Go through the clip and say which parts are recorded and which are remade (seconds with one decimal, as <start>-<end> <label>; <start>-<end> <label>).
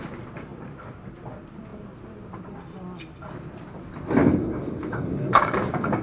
0.0-4.2 recorded; 4.2-6.0 remade